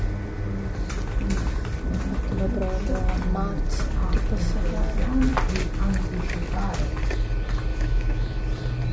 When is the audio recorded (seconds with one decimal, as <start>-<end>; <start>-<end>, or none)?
0.0-7.7; 8.4-8.9